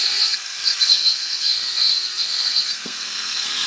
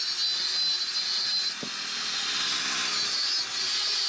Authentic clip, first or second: second